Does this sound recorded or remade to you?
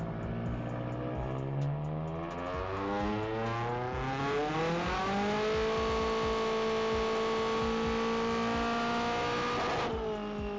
recorded